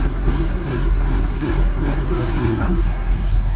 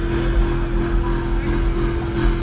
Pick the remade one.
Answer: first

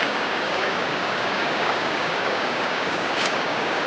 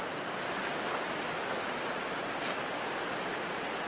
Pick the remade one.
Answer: first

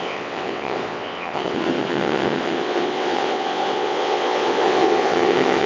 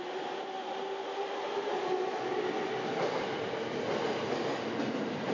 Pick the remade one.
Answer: first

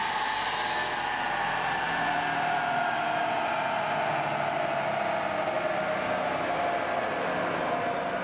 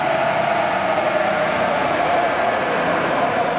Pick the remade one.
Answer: second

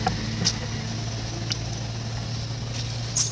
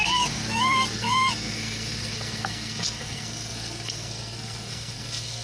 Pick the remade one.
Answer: second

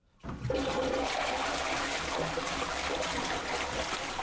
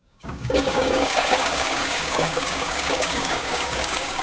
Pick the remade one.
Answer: second